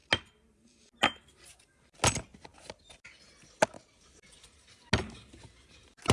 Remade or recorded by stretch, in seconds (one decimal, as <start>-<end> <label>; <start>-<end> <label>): 0.0-6.1 recorded